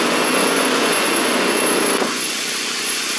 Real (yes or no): no